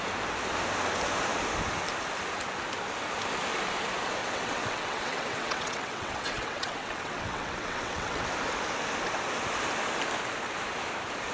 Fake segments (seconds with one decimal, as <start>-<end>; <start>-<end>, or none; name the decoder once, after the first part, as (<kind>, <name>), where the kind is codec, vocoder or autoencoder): 4.2-8.3 (vocoder, WaveNeXt)